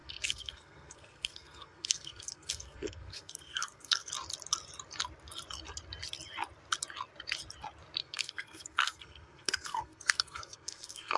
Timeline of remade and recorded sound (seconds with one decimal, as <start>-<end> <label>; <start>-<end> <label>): 0.0-4.1 remade; 4.1-8.0 recorded; 8.0-11.2 remade